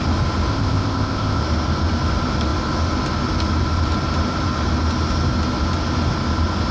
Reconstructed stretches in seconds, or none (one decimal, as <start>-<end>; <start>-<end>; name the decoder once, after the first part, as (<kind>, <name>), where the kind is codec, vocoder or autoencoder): 0.5-1.4 (codec, ZipCodec)